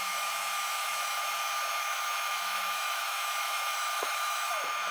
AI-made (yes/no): yes